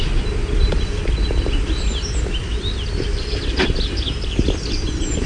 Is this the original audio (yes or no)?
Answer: yes